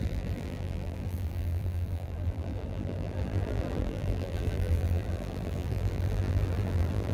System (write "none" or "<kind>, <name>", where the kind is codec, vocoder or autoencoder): vocoder, BigVGAN v2